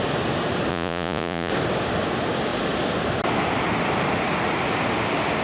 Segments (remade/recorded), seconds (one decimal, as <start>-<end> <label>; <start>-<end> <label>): 0.0-0.7 recorded; 0.7-1.5 remade; 1.5-5.4 recorded